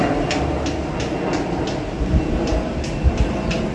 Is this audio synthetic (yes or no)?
no